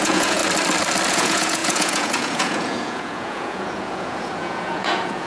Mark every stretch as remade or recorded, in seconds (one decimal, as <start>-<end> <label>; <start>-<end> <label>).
0.0-0.4 remade; 0.4-1.1 recorded; 1.1-5.3 remade

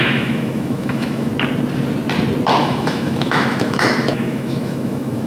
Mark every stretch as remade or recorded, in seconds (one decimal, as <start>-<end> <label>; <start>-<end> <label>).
0.0-1.3 remade; 1.3-2.6 recorded; 2.6-5.3 remade

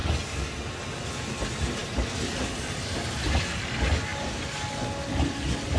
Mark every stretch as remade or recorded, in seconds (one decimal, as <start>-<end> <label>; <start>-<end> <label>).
0.0-5.8 recorded

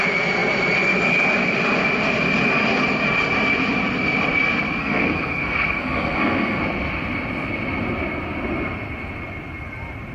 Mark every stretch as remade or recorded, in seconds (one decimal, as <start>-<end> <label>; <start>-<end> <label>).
0.0-4.8 recorded; 4.8-6.6 remade; 6.6-10.1 recorded

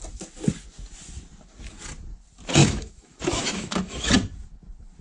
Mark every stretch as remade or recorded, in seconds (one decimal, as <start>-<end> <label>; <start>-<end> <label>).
0.0-2.6 recorded; 2.6-4.1 remade; 4.1-5.0 recorded

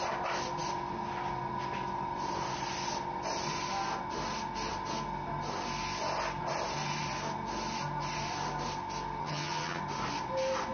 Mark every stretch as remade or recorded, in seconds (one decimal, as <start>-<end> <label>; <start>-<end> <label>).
0.0-9.2 recorded; 9.2-9.8 remade; 9.8-10.7 recorded